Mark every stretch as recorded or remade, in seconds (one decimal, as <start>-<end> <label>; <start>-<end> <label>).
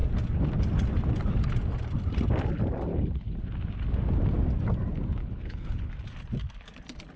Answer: 0.0-2.9 recorded; 2.9-3.4 remade; 3.4-5.2 recorded; 5.2-5.9 remade; 5.9-7.2 recorded